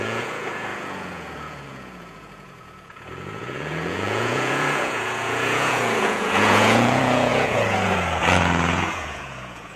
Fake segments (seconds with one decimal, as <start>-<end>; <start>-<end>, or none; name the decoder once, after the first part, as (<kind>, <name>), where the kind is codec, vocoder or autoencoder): 0.0-9.8 (vocoder, Vocos)